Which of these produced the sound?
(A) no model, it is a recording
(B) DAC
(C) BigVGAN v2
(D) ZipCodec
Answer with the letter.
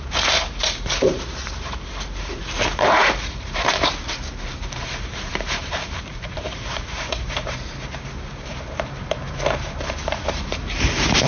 C